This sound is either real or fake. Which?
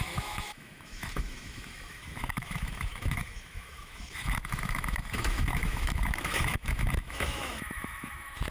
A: fake